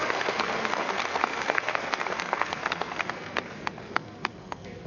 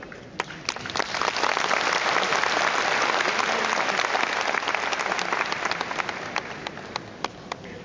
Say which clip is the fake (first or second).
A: first